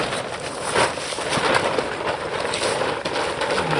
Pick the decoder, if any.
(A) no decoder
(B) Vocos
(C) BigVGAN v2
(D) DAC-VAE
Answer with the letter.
A